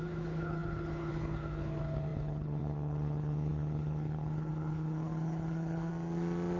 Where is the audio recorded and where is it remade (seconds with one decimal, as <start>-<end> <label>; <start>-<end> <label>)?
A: 0.0-5.9 remade; 5.9-6.6 recorded